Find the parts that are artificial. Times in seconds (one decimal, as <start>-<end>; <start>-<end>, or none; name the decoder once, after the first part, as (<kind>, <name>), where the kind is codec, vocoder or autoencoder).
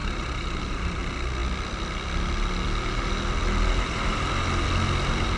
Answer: 0.0-1.0 (vocoder, BigVGAN v2)